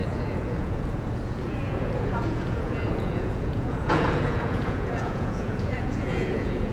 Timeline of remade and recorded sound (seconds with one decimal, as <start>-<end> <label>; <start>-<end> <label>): 0.0-6.7 remade